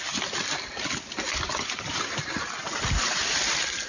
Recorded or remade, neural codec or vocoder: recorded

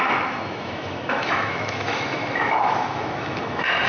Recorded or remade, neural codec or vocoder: remade, autoencoder, DAC-VAE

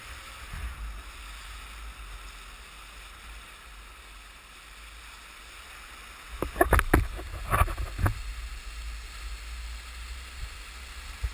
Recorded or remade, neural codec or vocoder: recorded